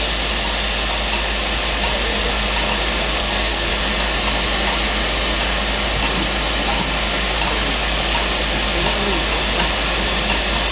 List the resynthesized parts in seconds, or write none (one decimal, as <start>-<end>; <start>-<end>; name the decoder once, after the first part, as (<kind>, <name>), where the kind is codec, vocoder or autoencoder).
3.2-3.7 (codec, SNAC)